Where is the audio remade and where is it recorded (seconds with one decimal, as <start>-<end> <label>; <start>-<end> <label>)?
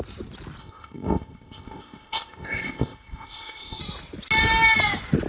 0.0-0.6 recorded; 0.6-3.8 remade; 3.8-5.3 recorded